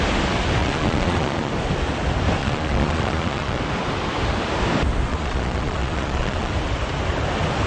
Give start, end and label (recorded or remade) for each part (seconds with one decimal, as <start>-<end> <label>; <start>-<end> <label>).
0.0-0.6 recorded; 0.6-1.5 remade; 1.5-2.4 recorded; 2.4-3.6 remade; 3.6-5.1 recorded; 5.1-6.5 remade; 6.5-7.7 recorded